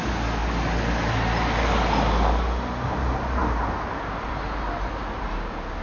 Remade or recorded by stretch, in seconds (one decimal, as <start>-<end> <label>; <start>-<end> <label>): 0.0-5.8 recorded

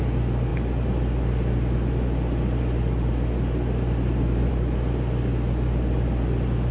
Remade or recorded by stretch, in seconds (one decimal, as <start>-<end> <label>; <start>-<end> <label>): 0.0-6.7 recorded